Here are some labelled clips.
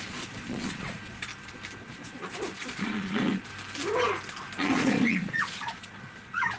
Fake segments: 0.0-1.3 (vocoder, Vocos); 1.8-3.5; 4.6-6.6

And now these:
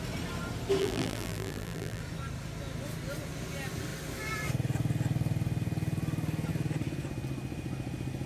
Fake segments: 0.8-2.0 (vocoder, BigVGAN v2)

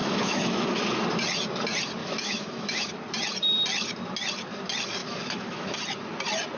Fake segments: 0.0-0.8 (autoencoder, DAC-VAE); 2.0-2.9; 5.0-5.8

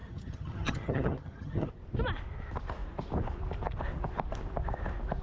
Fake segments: 0.0-1.7 (vocoder, HiFi-GAN)

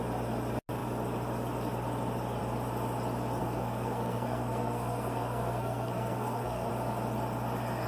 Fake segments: 3.4-6.7 (codec, SNAC)

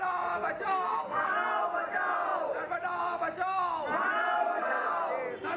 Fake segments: 0.7-1.3 (codec, SNAC); 4.4-4.9